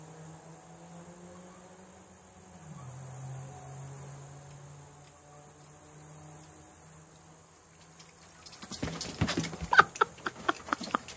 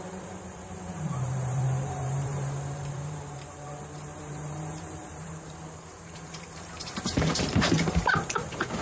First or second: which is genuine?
first